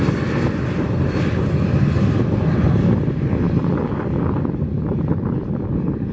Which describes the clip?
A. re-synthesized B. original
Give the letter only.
B